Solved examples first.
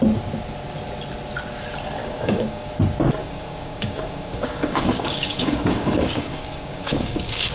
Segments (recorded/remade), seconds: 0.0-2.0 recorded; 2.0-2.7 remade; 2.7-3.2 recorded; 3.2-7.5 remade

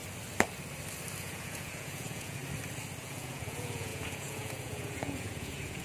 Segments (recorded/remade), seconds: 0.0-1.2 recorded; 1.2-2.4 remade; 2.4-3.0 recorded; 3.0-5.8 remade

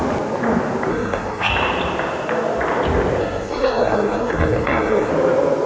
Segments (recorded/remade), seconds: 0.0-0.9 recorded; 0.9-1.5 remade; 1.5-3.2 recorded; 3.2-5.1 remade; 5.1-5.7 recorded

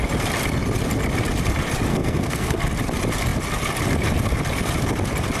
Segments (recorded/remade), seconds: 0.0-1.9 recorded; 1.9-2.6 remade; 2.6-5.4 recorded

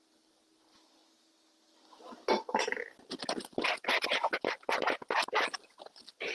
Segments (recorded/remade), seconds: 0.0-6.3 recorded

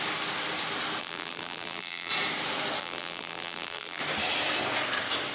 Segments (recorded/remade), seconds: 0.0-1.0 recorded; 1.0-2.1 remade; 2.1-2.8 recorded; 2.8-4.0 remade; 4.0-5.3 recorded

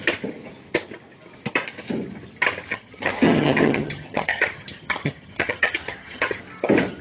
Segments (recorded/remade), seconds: 0.0-2.7 recorded; 2.7-6.4 remade; 6.4-7.0 recorded

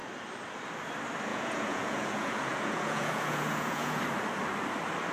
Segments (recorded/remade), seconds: 0.0-1.3 recorded; 1.3-4.0 remade; 4.0-5.1 recorded